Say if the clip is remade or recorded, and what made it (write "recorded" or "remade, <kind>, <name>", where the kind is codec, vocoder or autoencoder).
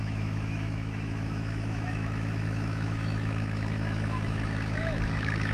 remade, autoencoder, DAC-VAE